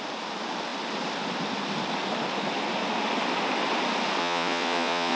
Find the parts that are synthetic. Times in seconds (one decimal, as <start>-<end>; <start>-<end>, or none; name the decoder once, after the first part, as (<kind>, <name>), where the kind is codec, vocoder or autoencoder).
4.2-5.2 (vocoder, Vocos)